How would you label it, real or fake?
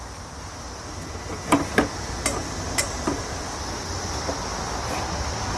real